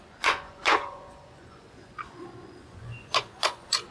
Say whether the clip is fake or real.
fake